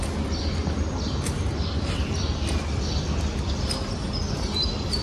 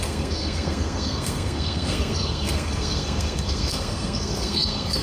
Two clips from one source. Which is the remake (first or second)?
second